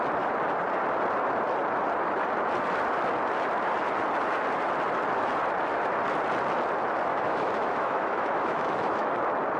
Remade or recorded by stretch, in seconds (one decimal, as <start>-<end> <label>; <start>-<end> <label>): 0.0-7.1 recorded; 7.1-9.1 remade; 9.1-9.6 recorded